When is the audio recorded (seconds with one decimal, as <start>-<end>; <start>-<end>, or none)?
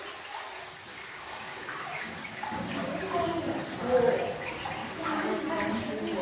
0.0-0.9; 3.3-4.8; 5.5-6.2